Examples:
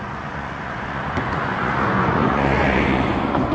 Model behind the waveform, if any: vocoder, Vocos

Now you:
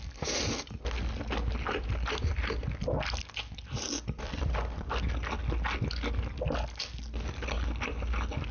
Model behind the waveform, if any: none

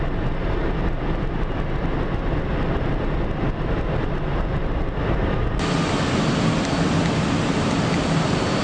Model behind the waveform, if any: none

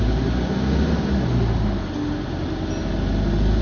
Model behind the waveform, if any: none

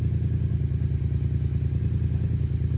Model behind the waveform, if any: none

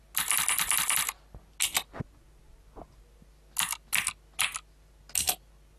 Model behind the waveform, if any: none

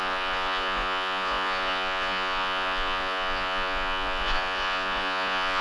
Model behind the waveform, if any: vocoder, Vocos